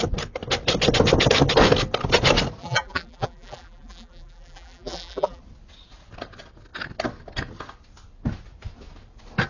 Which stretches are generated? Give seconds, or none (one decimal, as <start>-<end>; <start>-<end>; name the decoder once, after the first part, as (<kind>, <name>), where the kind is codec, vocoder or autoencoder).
2.6-5.4 (vocoder, BigVGAN v2)